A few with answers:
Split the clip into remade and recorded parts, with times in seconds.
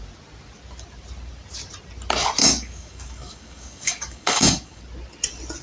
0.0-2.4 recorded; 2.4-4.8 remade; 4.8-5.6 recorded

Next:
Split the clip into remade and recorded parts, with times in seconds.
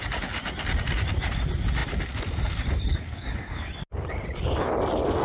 0.0-2.9 recorded; 2.9-3.7 remade; 3.7-5.2 recorded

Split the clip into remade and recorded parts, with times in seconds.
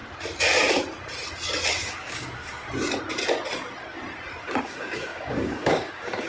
0.0-1.7 recorded; 1.7-2.6 remade; 2.6-4.6 recorded; 4.6-6.3 remade